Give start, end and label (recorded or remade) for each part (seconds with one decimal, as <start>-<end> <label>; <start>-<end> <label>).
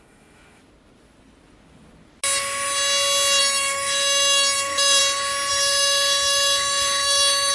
0.0-0.6 remade; 0.6-3.4 recorded; 3.4-5.0 remade; 5.0-5.5 recorded; 5.5-7.5 remade